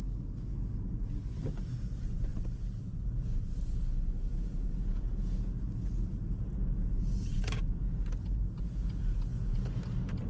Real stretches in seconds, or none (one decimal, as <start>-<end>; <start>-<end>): 0.0-4.3; 5.2-6.4; 7.9-9.3; 9.8-10.3

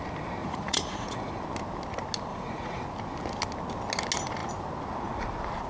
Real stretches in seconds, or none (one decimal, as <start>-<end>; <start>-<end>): 0.0-0.4; 1.4-2.3; 2.8-5.7